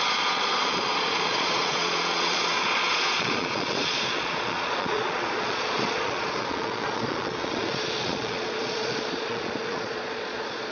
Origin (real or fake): fake